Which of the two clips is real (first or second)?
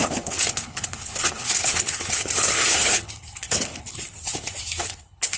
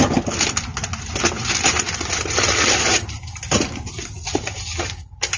second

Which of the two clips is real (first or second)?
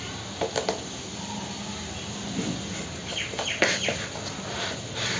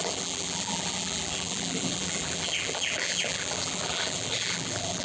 first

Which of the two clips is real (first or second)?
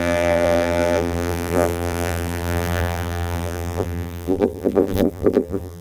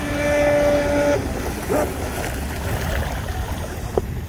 second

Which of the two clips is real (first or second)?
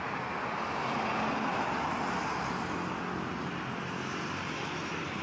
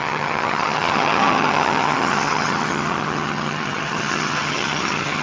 first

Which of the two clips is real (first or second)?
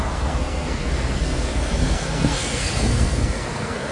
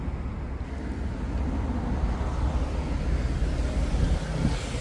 second